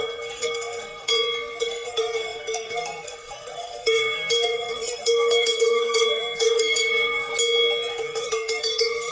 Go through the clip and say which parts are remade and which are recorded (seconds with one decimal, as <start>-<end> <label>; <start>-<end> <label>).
0.0-1.1 remade; 1.1-1.6 recorded; 1.6-7.3 remade; 7.3-7.9 recorded; 7.9-9.1 remade